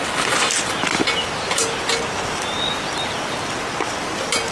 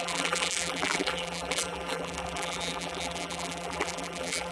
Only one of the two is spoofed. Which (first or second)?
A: second